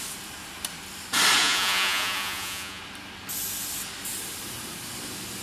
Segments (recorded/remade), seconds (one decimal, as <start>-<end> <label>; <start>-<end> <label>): 0.0-1.4 recorded; 1.4-2.8 remade; 2.8-5.4 recorded